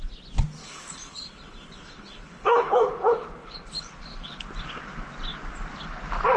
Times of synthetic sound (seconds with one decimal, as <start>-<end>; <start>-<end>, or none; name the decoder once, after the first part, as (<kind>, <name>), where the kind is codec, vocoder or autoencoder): 0.6-4.4 (codec, HILCodec)